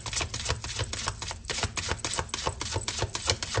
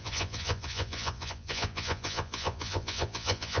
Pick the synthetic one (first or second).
second